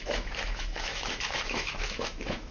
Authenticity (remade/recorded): remade